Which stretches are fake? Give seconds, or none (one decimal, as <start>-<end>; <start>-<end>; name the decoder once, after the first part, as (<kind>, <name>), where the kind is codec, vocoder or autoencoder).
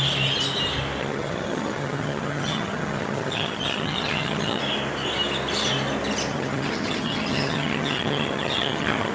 1.0-4.6 (vocoder, HiFi-GAN); 6.3-9.1